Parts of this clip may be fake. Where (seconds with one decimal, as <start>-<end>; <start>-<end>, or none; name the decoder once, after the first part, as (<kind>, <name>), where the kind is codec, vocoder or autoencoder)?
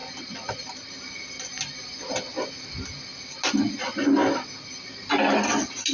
none